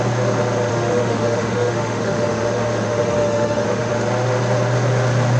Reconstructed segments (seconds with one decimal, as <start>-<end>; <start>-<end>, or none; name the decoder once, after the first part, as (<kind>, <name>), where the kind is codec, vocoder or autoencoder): 0.7-3.9 (autoencoder, DAC-VAE)